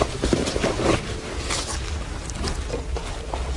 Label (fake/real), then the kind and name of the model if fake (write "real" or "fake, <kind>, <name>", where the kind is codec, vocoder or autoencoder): fake, vocoder, BigVGAN v2